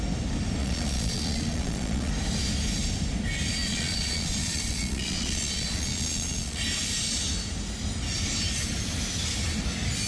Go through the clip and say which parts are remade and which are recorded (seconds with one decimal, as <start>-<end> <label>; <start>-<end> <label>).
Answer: 0.0-0.6 recorded; 0.6-2.1 remade; 2.1-3.6 recorded; 3.6-6.6 remade; 6.6-10.1 recorded